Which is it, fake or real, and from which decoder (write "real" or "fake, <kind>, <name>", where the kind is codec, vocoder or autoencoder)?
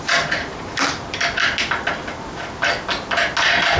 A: real